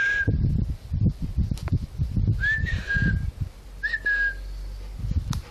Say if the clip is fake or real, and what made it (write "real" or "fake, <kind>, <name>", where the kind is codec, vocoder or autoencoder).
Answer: real